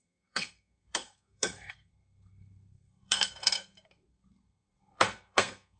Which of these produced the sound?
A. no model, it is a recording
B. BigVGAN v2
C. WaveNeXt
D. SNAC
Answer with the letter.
D